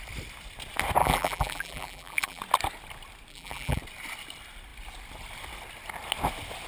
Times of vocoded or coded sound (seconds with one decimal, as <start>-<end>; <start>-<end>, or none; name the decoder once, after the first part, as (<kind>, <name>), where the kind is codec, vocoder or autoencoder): 1.0-2.4 (vocoder, BigVGAN v2); 3.3-3.8